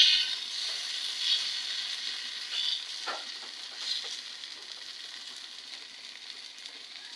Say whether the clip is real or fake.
real